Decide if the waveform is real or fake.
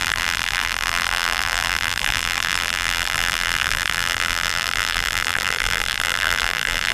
fake